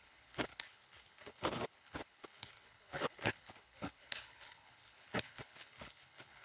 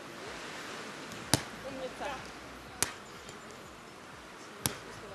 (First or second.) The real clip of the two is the second